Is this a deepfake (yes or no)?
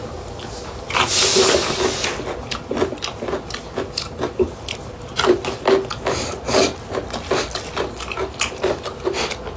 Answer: no